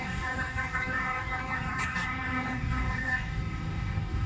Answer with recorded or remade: remade